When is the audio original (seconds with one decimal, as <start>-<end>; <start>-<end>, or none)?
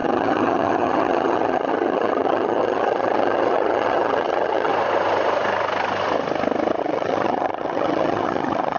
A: 4.7-6.8